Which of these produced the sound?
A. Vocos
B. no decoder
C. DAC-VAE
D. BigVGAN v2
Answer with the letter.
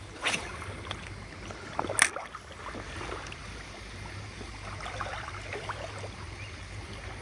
B